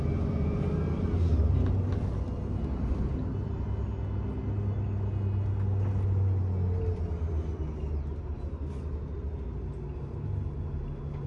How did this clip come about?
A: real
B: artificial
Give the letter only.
A